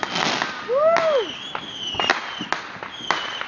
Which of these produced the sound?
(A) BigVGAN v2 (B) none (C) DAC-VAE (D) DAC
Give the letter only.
B